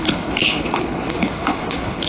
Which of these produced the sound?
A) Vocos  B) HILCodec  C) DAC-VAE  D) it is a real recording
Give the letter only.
B